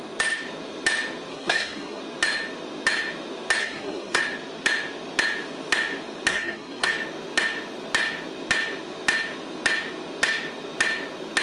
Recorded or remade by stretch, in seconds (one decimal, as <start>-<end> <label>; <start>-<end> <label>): 0.0-1.3 recorded; 1.3-2.0 remade; 2.0-3.6 recorded; 3.6-4.2 remade; 4.2-6.3 recorded; 6.3-6.9 remade; 6.9-11.4 recorded